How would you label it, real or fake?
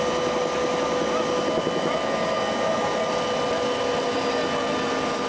real